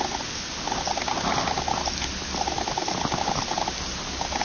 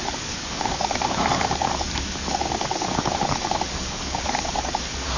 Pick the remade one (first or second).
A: second